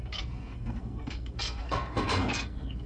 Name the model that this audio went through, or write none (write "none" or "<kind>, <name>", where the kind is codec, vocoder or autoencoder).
codec, SNAC